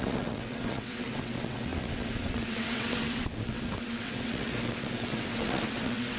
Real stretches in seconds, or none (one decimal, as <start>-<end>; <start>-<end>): none